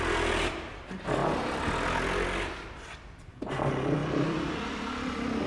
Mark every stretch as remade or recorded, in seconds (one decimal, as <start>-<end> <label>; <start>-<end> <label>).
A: 0.0-5.5 recorded